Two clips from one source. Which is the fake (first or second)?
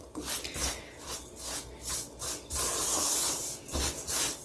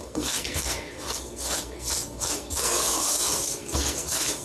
second